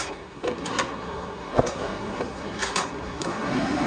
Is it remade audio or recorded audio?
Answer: remade